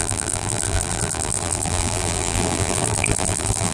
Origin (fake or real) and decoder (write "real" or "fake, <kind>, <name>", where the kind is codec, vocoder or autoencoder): fake, vocoder, BigVGAN v2